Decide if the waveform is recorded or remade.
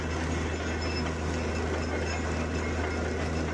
recorded